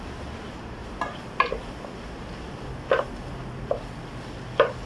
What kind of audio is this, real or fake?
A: real